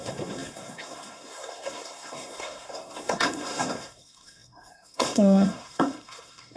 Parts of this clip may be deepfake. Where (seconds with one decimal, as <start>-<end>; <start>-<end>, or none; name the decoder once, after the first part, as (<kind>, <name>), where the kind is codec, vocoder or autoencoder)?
0.0-6.6 (codec, SNAC)